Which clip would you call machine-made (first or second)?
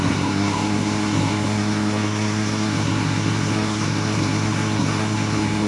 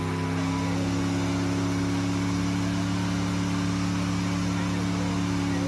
first